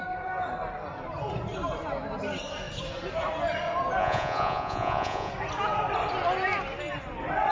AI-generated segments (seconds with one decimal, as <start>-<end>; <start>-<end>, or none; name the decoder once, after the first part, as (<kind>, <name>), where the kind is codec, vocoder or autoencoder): 4.0-5.3 (vocoder, Vocos)